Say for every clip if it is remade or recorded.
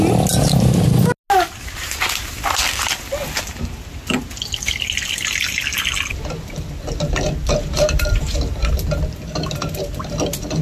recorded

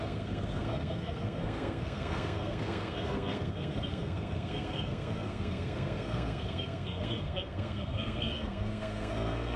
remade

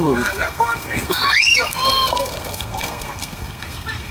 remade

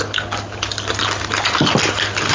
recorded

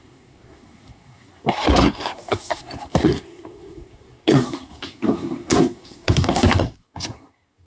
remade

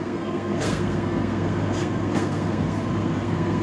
remade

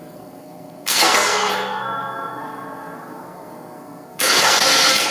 remade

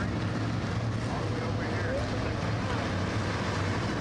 recorded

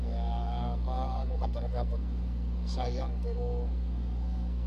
remade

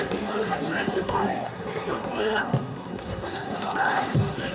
remade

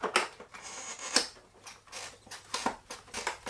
recorded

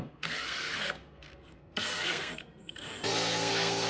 remade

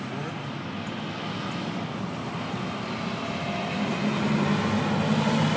recorded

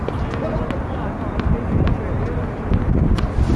recorded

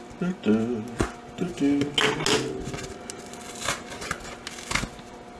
recorded